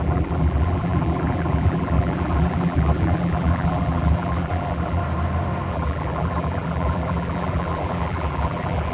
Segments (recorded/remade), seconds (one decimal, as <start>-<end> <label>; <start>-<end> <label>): 0.0-5.0 remade; 5.0-5.7 recorded; 5.7-8.9 remade